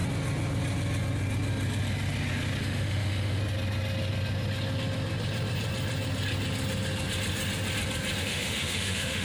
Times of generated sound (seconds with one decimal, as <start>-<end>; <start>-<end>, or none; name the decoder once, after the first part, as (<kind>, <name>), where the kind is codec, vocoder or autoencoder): 2.6-3.4 (autoencoder, DAC-VAE); 8.2-9.2